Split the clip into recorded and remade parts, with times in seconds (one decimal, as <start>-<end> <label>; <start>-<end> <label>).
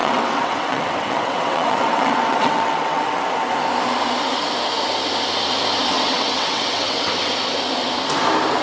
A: 0.0-3.2 remade; 3.2-5.9 recorded; 5.9-7.1 remade; 7.1-8.6 recorded